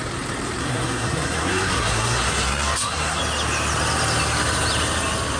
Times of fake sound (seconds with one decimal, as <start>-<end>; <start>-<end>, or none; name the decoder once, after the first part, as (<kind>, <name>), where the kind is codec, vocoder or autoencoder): 0.6-3.2 (codec, SNAC)